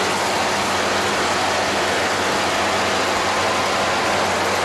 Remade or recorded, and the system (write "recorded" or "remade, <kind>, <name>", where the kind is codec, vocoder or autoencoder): recorded